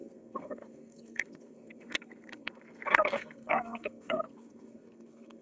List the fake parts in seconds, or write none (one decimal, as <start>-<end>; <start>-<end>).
0.0-5.4